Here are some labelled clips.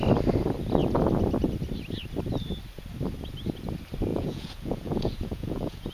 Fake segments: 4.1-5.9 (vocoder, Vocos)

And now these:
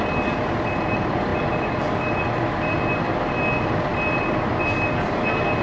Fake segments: none

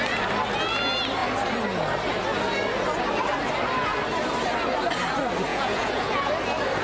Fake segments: 5.5-6.3 (vocoder, Vocos)

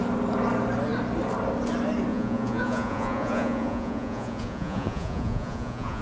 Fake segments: 2.1-6.0 (vocoder, Vocos)